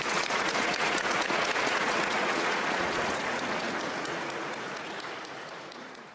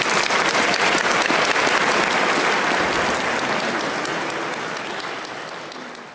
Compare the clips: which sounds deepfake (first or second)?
first